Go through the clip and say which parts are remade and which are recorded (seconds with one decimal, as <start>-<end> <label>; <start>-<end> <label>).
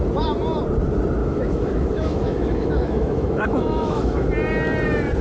0.0-1.2 recorded; 1.2-4.3 remade; 4.3-5.2 recorded